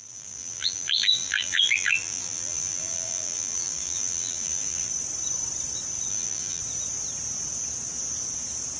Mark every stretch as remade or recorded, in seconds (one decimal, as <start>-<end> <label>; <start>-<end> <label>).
0.0-4.9 remade; 4.9-6.1 recorded; 6.1-6.6 remade; 6.6-8.8 recorded